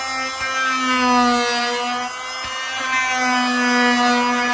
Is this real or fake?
real